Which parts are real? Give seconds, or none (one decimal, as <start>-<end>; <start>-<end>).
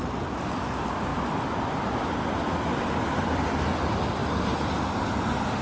0.0-0.5; 4.2-5.0